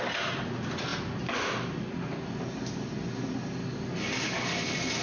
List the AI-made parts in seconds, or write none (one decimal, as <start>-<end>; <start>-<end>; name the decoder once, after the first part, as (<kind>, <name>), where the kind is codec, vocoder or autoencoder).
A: none